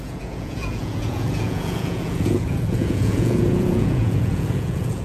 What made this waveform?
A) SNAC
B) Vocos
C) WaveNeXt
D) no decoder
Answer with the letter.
B